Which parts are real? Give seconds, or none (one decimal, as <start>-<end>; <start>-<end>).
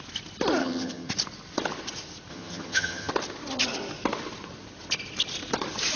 0.0-0.6; 1.1-2.3; 3.1-6.0